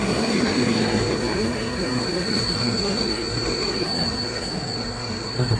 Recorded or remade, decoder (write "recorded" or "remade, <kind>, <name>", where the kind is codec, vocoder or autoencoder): remade, codec, SNAC